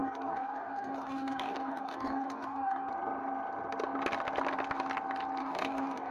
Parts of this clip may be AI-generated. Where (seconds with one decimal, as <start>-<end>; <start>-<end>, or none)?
0.0-2.9; 5.4-6.1